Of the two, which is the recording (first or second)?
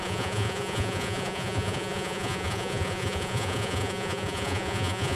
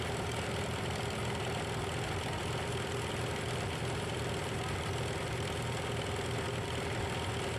second